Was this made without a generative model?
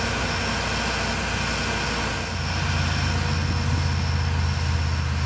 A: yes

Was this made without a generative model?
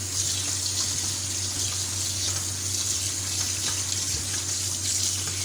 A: yes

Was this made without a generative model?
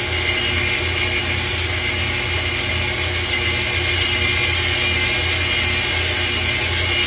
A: yes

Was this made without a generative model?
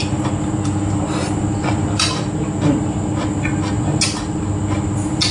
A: yes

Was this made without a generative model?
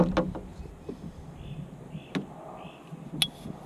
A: yes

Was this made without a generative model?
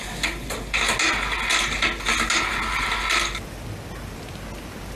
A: yes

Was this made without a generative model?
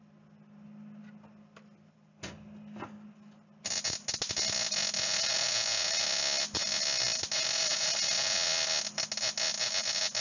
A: yes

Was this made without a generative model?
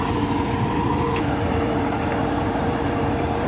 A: no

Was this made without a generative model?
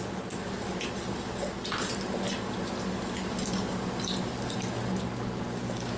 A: yes